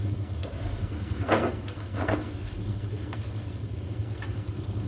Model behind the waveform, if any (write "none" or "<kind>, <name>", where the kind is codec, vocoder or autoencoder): codec, SNAC